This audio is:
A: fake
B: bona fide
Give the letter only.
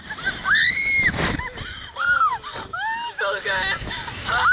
B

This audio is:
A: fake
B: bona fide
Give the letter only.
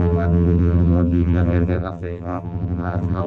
A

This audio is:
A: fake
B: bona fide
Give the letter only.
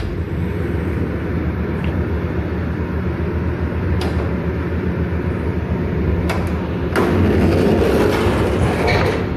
B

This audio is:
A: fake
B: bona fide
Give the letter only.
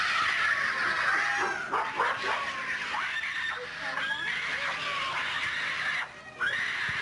B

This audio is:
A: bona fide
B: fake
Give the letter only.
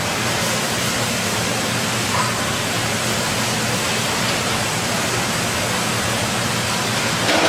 A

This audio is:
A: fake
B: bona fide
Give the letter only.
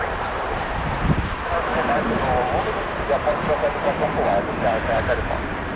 A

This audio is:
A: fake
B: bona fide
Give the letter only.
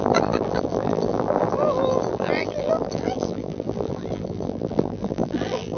A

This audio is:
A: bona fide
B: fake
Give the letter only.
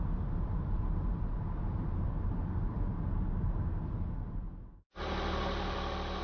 A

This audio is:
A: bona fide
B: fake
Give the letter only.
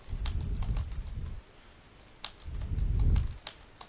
A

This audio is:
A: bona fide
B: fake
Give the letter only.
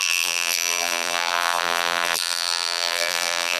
B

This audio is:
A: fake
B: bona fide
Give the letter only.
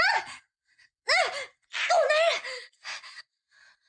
B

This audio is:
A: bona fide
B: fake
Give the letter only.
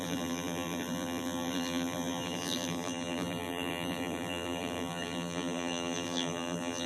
B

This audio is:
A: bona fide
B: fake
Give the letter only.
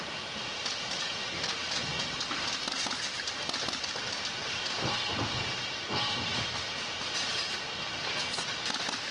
A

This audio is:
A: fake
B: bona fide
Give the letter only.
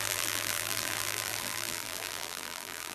A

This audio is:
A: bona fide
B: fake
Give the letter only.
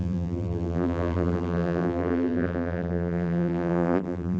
B